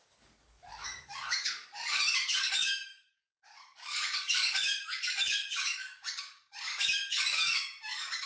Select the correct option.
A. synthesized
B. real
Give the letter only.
A